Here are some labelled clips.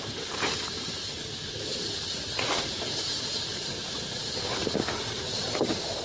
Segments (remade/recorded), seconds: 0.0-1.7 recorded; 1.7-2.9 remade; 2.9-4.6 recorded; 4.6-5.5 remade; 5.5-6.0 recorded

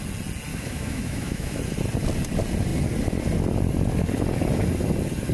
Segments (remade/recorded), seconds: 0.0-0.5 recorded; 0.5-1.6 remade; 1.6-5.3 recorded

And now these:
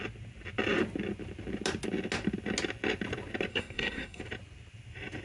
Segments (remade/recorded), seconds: 0.0-3.5 recorded; 3.5-4.2 remade; 4.2-5.2 recorded